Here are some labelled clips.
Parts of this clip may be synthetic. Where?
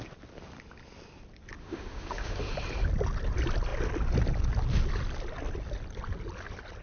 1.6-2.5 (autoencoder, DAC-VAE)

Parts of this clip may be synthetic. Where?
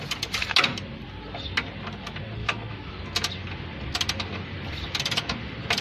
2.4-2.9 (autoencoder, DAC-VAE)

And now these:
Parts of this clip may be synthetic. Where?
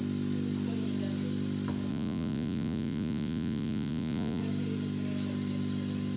1.9-4.4 (vocoder, Vocos)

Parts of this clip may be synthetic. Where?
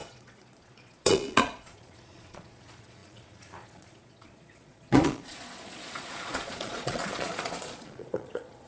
0.0-8.7 (vocoder, Vocos)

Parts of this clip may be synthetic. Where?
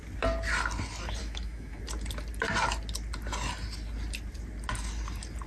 1.2-1.8 (autoencoder, DAC-VAE)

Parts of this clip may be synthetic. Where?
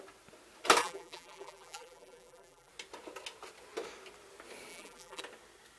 0.8-2.7 (vocoder, BigVGAN v2); 4.7-5.2